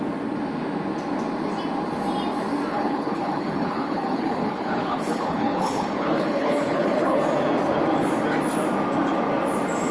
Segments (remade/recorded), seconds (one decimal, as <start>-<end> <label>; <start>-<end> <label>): 0.0-2.7 recorded; 2.7-7.2 remade; 7.2-9.9 recorded